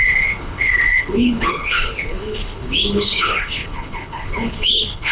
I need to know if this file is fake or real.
fake